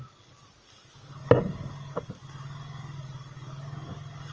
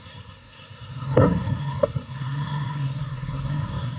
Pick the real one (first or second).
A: first